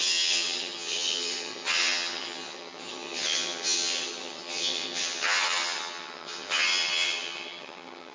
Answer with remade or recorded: remade